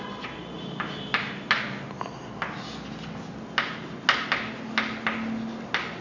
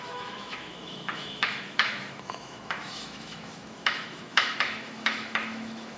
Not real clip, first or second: second